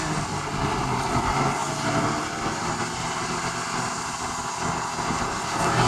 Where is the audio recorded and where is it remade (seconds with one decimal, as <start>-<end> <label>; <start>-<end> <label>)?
0.0-5.9 recorded

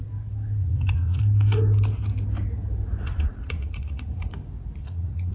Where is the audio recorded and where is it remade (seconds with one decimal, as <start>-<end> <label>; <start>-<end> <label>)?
0.0-0.6 recorded; 0.6-1.2 remade; 1.2-3.0 recorded; 3.0-4.3 remade; 4.3-4.8 recorded; 4.8-5.3 remade

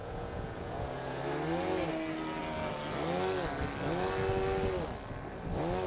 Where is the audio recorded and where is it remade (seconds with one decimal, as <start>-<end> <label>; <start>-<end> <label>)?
0.0-1.2 remade; 1.2-5.9 recorded

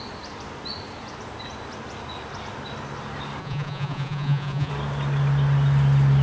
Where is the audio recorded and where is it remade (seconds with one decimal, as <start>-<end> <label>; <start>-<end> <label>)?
0.0-3.4 recorded; 3.4-4.7 remade; 4.7-6.2 recorded

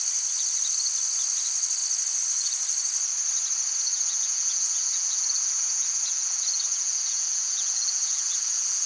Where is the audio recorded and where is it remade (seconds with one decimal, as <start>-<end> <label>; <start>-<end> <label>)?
0.0-3.9 recorded; 3.9-8.9 remade